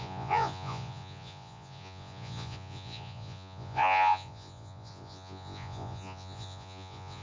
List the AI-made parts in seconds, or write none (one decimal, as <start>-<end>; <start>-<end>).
0.0-7.2